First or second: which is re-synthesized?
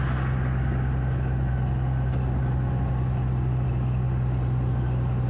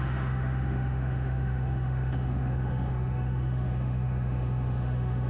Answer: second